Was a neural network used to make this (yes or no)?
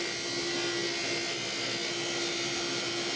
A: no